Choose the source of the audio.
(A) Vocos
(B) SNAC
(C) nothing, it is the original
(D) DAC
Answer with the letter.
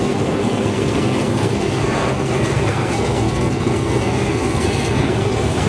B